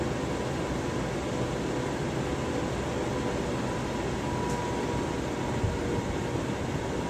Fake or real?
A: real